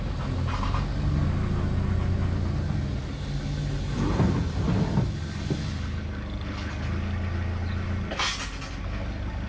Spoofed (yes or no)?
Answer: no